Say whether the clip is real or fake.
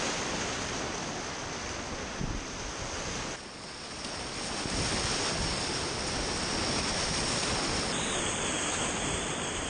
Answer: real